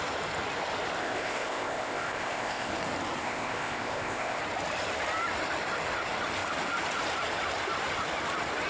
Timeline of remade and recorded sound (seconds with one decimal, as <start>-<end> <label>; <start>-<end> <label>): 0.0-1.0 recorded; 1.0-2.7 remade; 2.7-3.2 recorded; 3.2-4.4 remade; 4.4-8.7 recorded